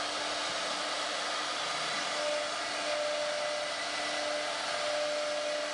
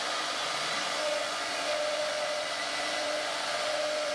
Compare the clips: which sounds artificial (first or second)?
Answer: second